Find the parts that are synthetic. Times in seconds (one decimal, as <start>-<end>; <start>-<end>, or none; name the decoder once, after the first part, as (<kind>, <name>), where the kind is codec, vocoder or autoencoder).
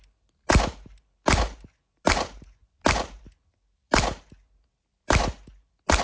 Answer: none